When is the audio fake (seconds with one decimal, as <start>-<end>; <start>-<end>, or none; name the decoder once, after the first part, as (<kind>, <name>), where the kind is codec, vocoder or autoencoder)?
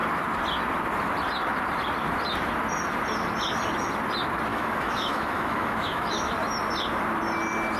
4.5-6.3 (autoencoder, DAC-VAE)